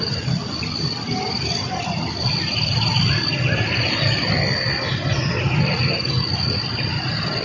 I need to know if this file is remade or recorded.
recorded